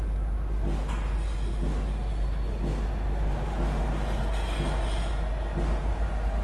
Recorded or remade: recorded